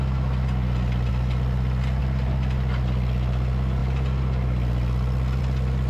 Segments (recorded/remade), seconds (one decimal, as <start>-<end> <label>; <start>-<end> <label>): 0.0-1.1 recorded; 1.1-2.0 remade; 2.0-3.8 recorded; 3.8-5.4 remade; 5.4-5.9 recorded